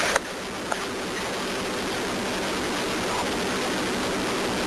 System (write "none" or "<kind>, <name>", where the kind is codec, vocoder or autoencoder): none